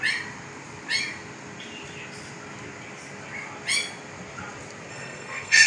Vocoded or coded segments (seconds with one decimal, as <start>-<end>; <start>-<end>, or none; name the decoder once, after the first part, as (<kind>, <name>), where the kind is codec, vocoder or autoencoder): 4.9-5.7 (codec, SNAC)